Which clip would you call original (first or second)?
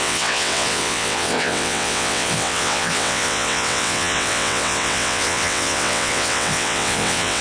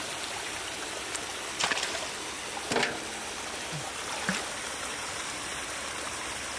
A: second